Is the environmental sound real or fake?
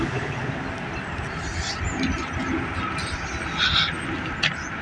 real